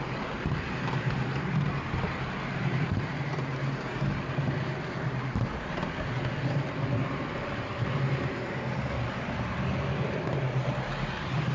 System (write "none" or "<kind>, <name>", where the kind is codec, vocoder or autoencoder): none